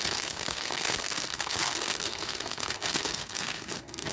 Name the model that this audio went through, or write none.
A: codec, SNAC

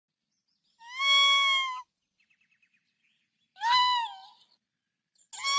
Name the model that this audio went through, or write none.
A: none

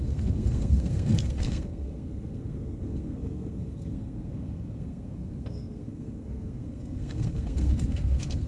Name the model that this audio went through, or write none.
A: codec, SNAC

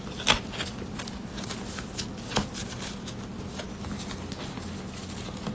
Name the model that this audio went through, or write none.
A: none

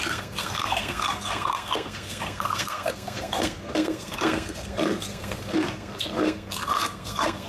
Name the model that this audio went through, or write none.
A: codec, SNAC